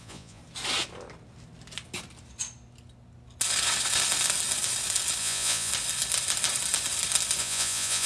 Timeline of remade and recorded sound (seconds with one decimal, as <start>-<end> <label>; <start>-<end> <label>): 0.0-0.4 remade; 0.4-5.2 recorded; 5.2-5.7 remade; 5.7-7.4 recorded; 7.4-8.1 remade